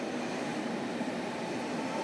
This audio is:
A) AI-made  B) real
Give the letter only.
B